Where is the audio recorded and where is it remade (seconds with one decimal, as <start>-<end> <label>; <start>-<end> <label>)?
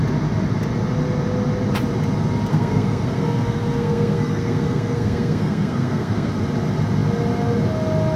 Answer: 0.0-2.5 recorded; 2.5-6.3 remade; 6.3-8.2 recorded